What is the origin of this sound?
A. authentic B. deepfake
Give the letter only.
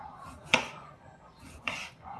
B